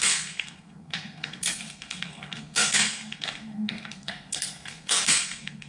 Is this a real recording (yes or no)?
no